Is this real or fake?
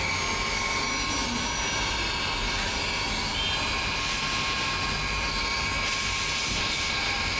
real